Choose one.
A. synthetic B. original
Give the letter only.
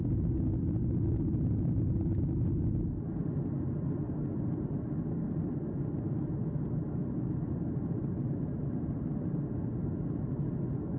B